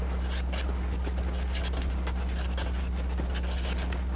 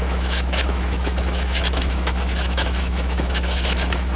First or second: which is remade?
second